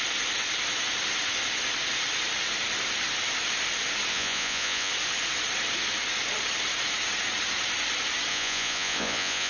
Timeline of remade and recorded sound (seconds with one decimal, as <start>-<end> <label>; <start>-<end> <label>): 0.0-4.1 recorded; 4.1-4.9 remade; 4.9-8.3 recorded; 8.3-9.5 remade